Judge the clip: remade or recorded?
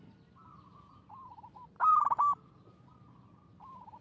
recorded